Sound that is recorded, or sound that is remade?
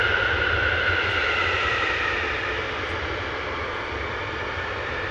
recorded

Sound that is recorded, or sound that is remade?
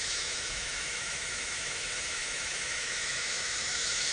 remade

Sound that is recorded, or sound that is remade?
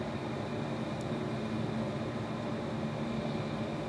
recorded